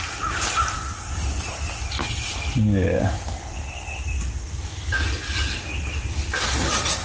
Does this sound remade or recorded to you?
recorded